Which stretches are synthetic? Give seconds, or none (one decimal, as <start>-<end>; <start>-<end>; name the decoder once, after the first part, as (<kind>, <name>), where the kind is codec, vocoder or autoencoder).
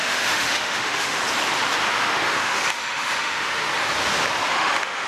0.0-1.2 (autoencoder, DAC-VAE); 1.9-3.7; 4.5-5.1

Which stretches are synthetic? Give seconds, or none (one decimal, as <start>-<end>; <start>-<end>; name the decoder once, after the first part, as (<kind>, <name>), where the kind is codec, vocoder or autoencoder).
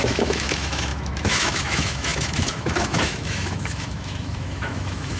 0.0-5.2 (autoencoder, DAC-VAE)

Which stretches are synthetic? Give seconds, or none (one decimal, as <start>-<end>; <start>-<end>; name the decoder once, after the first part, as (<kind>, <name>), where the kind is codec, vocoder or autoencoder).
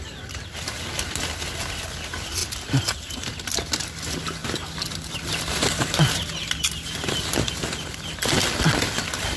2.4-3.3 (vocoder, BigVGAN v2)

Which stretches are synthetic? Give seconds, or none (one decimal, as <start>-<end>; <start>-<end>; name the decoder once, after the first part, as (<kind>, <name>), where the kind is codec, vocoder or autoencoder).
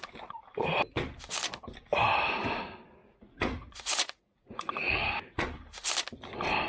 3.0-5.1 (vocoder, Vocos)